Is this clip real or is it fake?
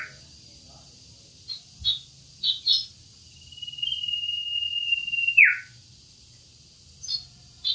real